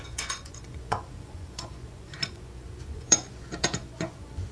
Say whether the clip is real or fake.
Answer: fake